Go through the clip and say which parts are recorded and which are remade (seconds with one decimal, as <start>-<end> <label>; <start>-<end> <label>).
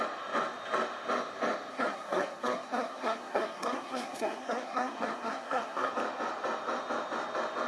0.0-1.7 recorded; 1.7-5.9 remade; 5.9-7.7 recorded